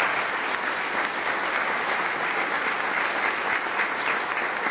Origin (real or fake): real